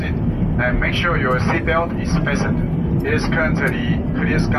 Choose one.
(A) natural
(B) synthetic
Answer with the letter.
A